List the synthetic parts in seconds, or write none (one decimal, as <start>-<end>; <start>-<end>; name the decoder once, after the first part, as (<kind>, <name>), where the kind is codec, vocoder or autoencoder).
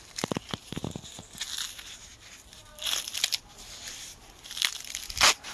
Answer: none